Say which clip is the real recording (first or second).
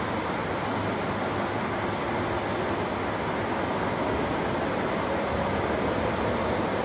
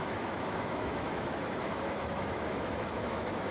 first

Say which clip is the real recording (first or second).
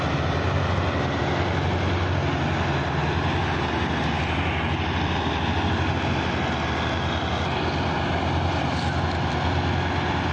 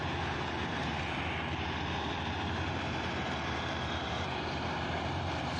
first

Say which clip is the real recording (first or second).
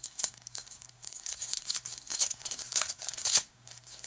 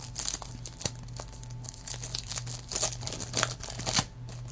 second